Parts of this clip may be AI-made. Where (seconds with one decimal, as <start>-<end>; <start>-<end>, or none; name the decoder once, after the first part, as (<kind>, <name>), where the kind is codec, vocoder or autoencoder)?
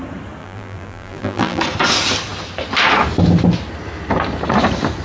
0.4-1.6 (vocoder, BigVGAN v2)